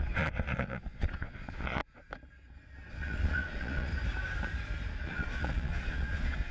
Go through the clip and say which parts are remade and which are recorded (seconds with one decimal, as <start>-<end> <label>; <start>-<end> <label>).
0.0-1.8 remade; 1.8-2.9 recorded; 2.9-3.9 remade; 3.9-5.0 recorded; 5.0-6.5 remade